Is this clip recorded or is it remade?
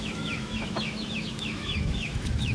remade